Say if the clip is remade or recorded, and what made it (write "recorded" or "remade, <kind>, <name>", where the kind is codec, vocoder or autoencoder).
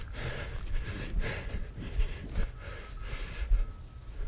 recorded